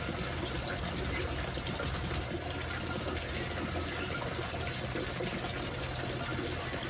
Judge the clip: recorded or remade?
recorded